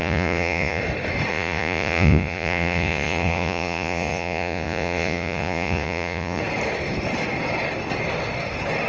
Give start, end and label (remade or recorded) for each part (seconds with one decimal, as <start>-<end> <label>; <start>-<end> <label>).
0.0-0.8 remade; 0.8-1.3 recorded; 1.3-6.4 remade; 6.4-8.9 recorded